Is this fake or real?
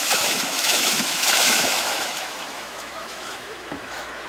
fake